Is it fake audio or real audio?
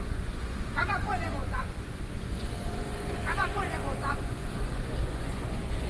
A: fake